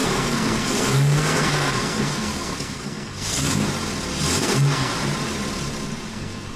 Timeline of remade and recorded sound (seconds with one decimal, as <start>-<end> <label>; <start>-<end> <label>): 0.0-3.7 remade; 3.7-4.4 recorded; 4.4-4.9 remade; 4.9-6.1 recorded; 6.1-6.6 remade